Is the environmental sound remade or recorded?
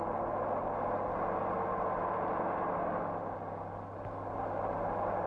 recorded